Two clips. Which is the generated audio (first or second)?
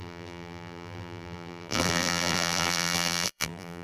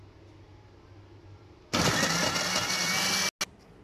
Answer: first